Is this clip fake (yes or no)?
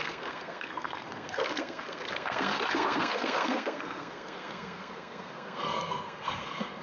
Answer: yes